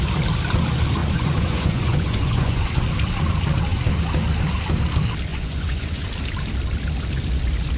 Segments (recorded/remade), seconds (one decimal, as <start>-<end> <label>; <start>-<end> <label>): 0.0-1.0 recorded; 1.0-2.8 remade; 2.8-5.3 recorded; 5.3-6.0 remade; 6.0-7.8 recorded